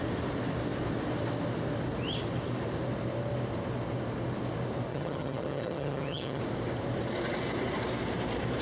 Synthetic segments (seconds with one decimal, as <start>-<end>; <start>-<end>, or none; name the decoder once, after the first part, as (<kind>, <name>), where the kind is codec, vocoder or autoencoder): 4.9-6.4 (vocoder, HiFi-GAN)